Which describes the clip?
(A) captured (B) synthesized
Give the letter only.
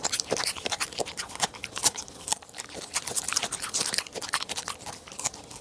A